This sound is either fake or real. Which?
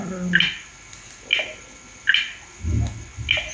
real